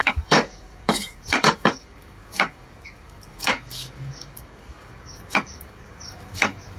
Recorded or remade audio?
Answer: remade